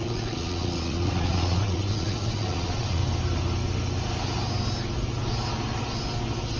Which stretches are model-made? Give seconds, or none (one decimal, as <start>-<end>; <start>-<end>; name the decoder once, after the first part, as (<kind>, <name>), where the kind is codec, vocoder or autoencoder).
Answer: 0.0-3.0 (vocoder, Vocos)